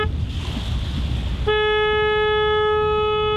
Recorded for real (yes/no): yes